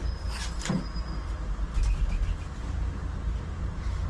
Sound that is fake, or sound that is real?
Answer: real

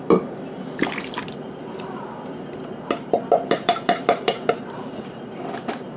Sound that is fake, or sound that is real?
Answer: fake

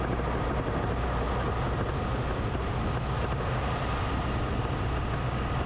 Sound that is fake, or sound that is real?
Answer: real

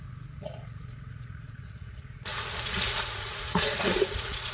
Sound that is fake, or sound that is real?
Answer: fake